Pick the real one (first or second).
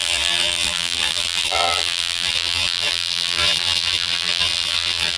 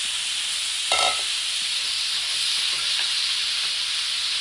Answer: second